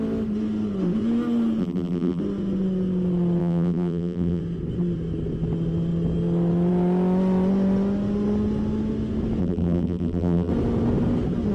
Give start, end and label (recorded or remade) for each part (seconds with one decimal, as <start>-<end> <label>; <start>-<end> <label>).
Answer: 0.0-1.6 recorded; 1.6-2.2 remade; 2.2-3.4 recorded; 3.4-4.4 remade; 4.4-9.4 recorded; 9.4-10.5 remade; 10.5-11.5 recorded

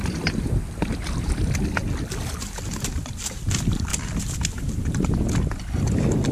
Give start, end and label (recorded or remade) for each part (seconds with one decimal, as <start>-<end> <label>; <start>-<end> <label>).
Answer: 0.0-3.9 recorded; 3.9-5.1 remade; 5.1-6.3 recorded

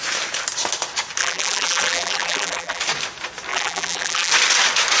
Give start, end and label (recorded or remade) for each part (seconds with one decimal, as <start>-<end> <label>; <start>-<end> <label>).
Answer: 0.0-1.2 recorded; 1.2-2.8 remade; 2.8-3.5 recorded; 3.5-4.3 remade; 4.3-5.0 recorded

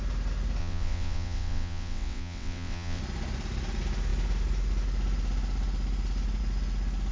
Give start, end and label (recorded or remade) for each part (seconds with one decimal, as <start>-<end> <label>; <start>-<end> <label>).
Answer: 0.0-0.6 recorded; 0.6-3.0 remade; 3.0-7.1 recorded

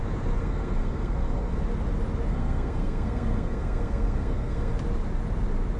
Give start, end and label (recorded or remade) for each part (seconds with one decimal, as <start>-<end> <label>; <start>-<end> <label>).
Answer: 0.0-0.4 recorded; 0.4-1.6 remade; 1.6-2.3 recorded; 2.3-4.7 remade; 4.7-5.8 recorded

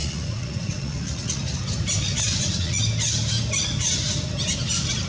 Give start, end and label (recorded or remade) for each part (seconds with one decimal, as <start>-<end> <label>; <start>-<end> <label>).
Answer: 0.0-1.4 remade; 1.4-2.3 recorded; 2.3-2.8 remade; 2.8-5.1 recorded

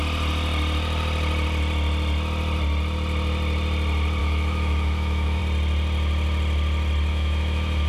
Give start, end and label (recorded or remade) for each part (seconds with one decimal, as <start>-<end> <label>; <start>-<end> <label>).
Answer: 0.0-4.2 recorded; 4.2-5.4 remade; 5.4-7.1 recorded; 7.1-7.9 remade

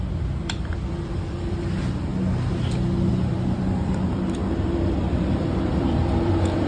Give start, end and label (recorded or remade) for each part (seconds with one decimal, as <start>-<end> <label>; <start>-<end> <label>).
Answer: 0.0-2.1 remade; 2.1-3.1 recorded; 3.1-6.7 remade